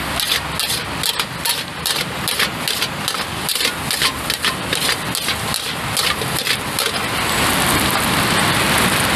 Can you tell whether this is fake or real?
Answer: real